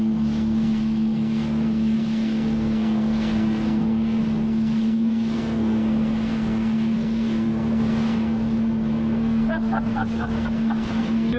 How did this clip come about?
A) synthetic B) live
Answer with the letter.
A